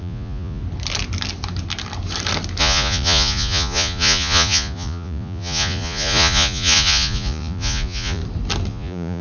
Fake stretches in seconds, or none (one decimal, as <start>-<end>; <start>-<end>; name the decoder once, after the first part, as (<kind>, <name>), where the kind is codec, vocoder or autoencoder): 0.0-0.6 (vocoder, Vocos); 2.6-8.2; 8.7-9.2